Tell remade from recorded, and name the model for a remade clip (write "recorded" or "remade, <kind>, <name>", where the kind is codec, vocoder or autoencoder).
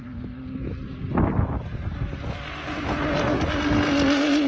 recorded